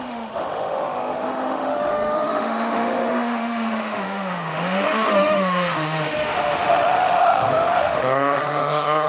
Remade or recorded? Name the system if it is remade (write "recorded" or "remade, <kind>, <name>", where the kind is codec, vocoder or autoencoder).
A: remade, autoencoder, DAC-VAE